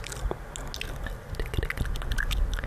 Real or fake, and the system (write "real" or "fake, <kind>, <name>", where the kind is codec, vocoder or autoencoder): real